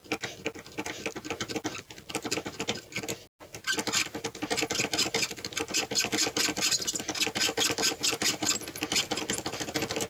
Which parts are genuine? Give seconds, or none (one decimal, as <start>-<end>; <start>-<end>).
0.0-10.1